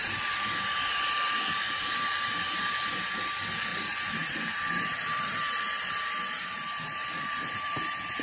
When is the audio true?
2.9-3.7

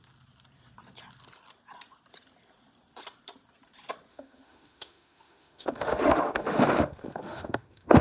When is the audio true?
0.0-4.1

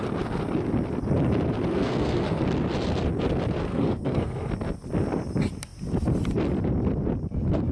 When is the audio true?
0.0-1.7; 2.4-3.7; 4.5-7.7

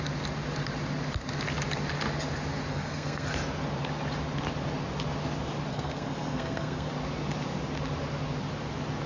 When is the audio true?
0.0-2.7; 3.3-5.7; 6.9-9.1

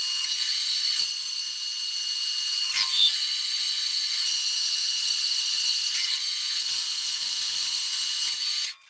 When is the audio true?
0.0-0.7; 1.4-5.0; 6.2-8.9